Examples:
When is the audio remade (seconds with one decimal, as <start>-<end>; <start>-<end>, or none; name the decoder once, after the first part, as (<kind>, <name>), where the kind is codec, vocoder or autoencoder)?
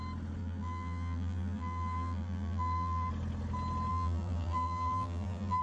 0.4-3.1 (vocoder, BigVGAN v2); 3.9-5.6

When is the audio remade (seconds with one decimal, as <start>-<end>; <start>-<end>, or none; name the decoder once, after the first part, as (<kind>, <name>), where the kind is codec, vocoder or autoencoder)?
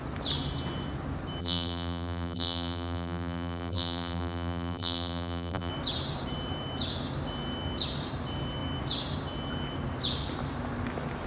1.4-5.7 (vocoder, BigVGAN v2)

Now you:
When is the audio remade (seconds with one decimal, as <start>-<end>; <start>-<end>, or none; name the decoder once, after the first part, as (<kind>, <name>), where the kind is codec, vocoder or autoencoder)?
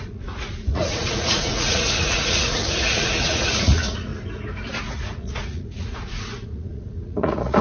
0.0-4.1 (vocoder, Vocos); 4.8-7.6